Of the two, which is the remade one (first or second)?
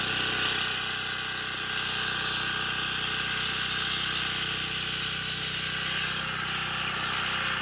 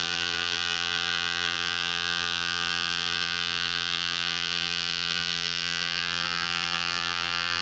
second